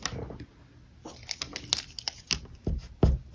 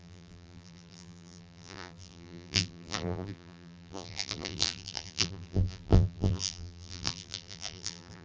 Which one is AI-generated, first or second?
second